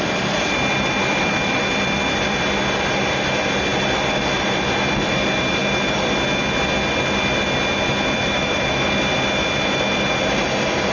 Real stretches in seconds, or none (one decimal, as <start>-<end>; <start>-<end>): 0.0-1.0; 1.6-8.2; 8.9-10.9